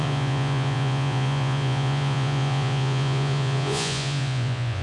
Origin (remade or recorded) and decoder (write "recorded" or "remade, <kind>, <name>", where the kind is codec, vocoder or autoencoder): remade, vocoder, Vocos